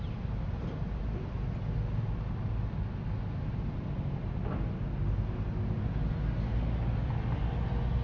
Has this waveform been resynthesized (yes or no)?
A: no